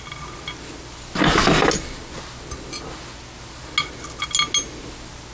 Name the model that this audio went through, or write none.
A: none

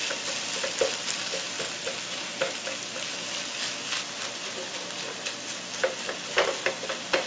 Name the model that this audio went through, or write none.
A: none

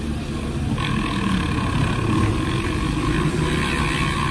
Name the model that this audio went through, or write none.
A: none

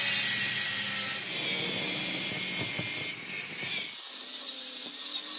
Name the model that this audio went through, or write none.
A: none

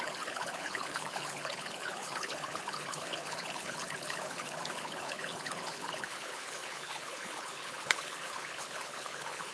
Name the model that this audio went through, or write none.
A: codec, HILCodec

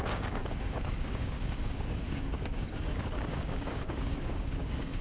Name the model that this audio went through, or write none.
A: codec, DAC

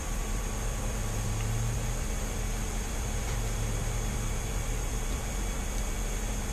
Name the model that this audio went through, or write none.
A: vocoder, BigVGAN v2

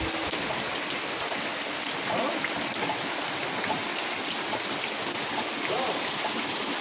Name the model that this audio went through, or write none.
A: none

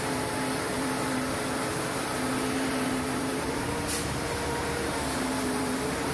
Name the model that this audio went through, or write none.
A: vocoder, BigVGAN v2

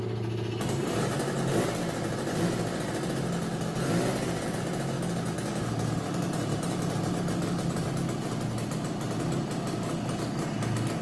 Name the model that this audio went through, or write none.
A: none